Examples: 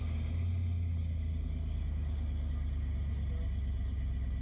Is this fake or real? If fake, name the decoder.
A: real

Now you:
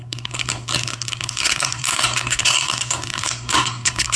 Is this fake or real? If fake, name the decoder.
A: fake, codec, SNAC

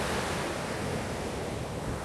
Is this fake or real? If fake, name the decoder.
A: real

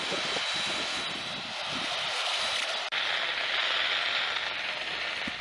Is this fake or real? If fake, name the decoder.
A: real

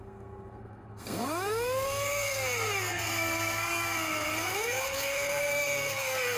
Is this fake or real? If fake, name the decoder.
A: fake, codec, SNAC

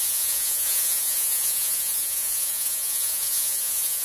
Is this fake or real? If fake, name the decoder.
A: fake, vocoder, Vocos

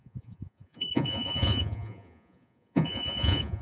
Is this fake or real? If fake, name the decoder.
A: fake, vocoder, Vocos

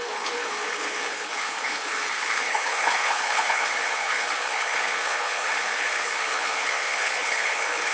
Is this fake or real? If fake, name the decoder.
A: fake, codec, HILCodec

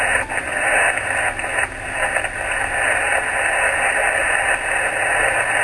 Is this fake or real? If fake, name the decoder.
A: real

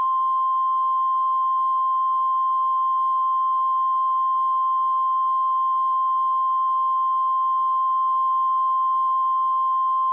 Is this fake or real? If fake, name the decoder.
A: real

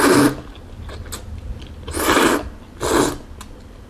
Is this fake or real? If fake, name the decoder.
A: real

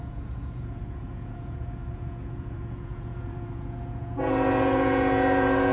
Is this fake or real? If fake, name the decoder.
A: fake, vocoder, Vocos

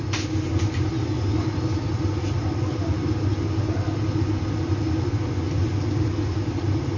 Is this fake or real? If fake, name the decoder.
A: real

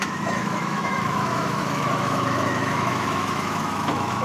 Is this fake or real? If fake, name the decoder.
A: fake, autoencoder, DAC-VAE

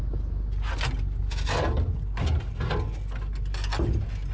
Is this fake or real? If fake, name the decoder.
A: real